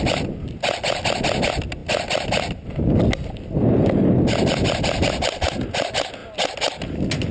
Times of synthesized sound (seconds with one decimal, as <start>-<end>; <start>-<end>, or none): none